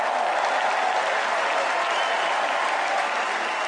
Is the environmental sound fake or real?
real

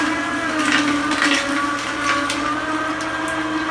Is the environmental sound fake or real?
real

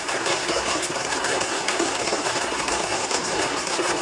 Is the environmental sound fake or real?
fake